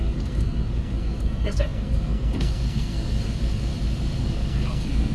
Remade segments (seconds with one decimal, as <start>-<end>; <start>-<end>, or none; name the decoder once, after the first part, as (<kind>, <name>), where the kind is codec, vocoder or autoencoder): 0.0-3.7 (codec, SNAC); 4.2-5.1